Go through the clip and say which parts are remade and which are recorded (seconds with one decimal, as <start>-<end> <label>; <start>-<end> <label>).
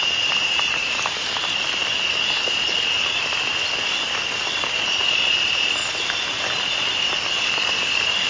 0.0-5.8 remade; 5.8-7.3 recorded; 7.3-8.3 remade